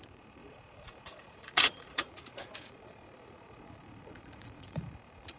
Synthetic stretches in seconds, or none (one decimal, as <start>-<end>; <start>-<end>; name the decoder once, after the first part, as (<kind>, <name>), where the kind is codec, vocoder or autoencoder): 0.0-5.4 (vocoder, Vocos)